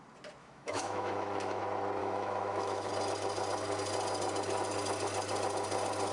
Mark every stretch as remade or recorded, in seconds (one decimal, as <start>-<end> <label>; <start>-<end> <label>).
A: 0.0-0.4 recorded; 0.4-1.6 remade; 1.6-2.0 recorded; 2.0-2.9 remade; 2.9-6.1 recorded